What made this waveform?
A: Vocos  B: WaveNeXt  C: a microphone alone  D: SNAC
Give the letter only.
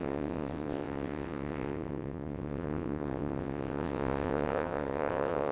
B